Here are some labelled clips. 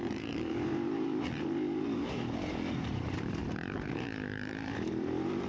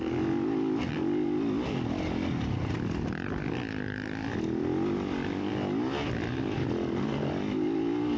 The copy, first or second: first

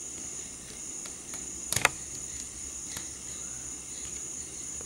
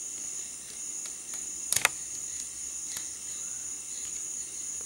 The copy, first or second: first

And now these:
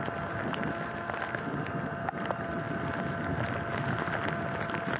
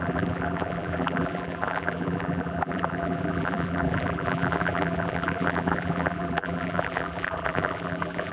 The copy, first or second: second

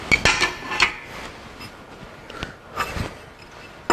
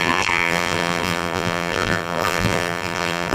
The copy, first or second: second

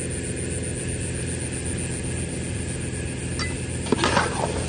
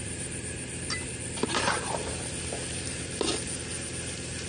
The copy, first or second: second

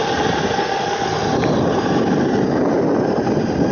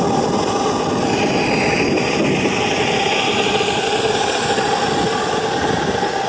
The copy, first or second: first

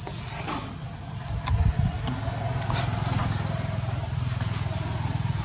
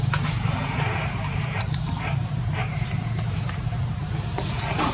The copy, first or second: second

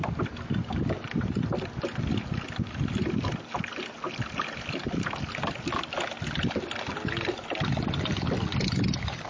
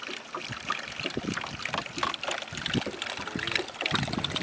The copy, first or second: second